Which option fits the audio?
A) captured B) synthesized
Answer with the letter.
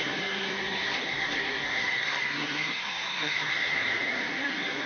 B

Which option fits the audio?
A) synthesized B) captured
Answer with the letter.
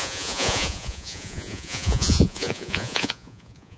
A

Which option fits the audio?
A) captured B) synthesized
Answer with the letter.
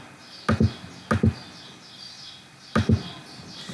A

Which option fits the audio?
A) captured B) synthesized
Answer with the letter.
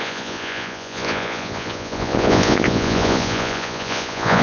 B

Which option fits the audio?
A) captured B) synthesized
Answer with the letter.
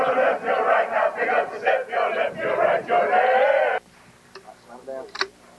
A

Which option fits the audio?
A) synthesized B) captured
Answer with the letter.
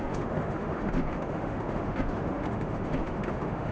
A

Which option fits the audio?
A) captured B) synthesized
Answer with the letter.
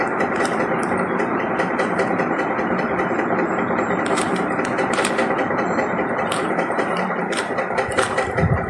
B